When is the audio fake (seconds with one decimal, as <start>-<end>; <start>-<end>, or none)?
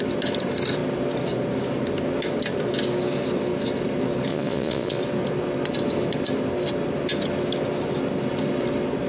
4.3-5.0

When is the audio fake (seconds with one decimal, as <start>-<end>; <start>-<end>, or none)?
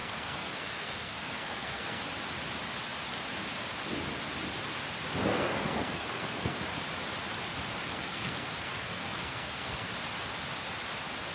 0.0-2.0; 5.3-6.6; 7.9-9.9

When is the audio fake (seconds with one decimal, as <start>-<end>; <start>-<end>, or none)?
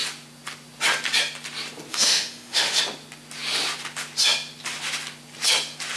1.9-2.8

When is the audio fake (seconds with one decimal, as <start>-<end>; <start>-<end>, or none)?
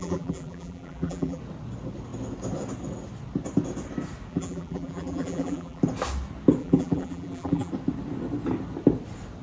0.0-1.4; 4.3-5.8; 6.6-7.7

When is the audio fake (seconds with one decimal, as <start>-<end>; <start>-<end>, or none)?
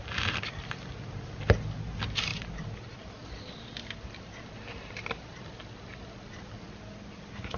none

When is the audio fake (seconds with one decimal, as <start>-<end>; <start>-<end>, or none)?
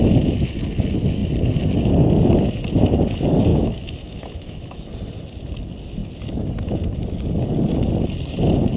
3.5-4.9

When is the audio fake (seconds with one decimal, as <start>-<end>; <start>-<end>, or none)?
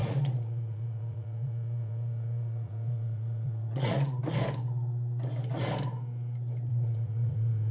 0.0-4.2; 6.7-7.7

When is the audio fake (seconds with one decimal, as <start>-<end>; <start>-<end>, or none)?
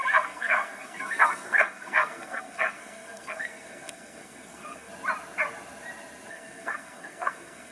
0.0-4.9; 6.3-7.7